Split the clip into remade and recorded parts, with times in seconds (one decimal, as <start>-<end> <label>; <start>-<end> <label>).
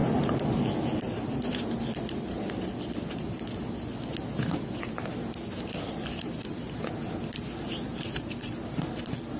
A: 0.0-9.4 recorded